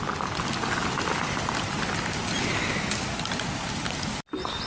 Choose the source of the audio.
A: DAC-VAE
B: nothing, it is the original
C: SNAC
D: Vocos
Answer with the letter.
B